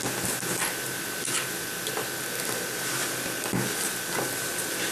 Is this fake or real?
real